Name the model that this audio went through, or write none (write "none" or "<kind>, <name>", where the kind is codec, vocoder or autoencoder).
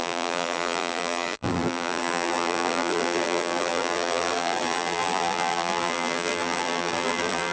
vocoder, BigVGAN v2